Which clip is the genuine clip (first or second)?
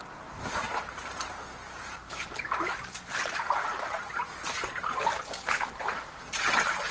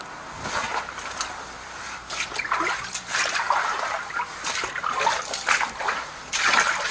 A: second